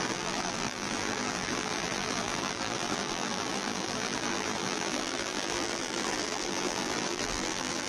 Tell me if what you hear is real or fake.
fake